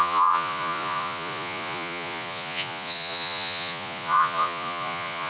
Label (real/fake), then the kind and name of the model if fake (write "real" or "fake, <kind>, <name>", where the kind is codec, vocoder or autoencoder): fake, vocoder, Vocos